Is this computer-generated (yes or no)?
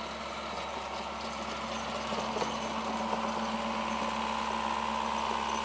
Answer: no